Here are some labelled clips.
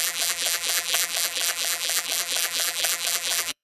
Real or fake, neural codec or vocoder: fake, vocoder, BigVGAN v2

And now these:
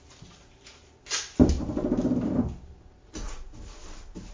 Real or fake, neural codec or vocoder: real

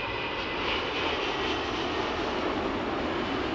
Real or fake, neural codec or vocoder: real